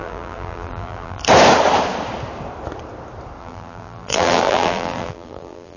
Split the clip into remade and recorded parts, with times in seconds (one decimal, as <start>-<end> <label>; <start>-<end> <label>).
0.0-1.2 remade; 1.2-3.4 recorded; 3.4-5.8 remade